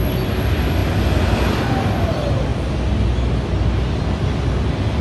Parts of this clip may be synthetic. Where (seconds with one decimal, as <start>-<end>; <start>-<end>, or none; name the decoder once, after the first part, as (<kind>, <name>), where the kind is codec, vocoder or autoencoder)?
none